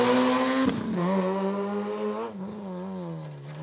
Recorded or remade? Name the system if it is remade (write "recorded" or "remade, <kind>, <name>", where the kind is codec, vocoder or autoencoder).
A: recorded